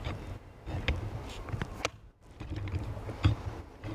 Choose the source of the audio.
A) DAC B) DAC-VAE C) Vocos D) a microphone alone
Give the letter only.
D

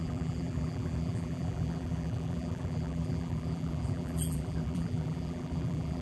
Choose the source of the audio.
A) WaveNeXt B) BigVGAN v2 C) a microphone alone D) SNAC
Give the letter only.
B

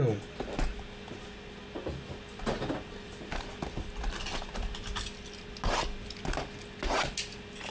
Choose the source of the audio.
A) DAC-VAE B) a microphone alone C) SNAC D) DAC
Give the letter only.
B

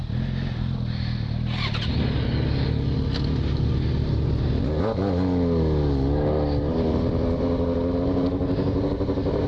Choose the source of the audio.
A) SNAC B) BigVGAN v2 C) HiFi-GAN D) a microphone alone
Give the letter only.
D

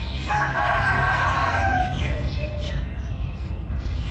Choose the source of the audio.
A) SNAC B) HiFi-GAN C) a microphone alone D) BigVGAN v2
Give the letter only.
A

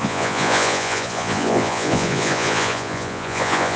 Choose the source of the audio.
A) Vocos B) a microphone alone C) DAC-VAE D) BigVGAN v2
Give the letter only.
A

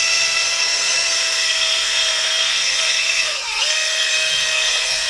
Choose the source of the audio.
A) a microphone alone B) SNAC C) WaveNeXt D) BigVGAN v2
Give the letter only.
B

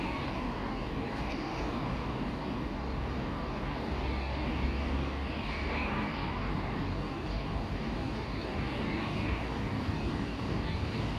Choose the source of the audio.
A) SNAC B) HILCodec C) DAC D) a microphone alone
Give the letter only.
C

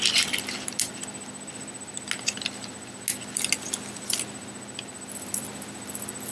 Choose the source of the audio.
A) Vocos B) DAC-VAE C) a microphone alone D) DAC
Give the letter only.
C